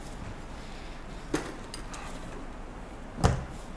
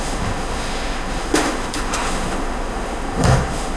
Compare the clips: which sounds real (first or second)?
first